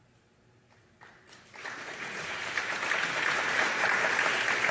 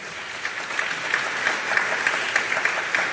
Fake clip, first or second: first